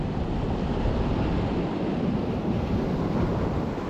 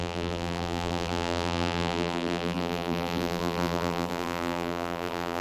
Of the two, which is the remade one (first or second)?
second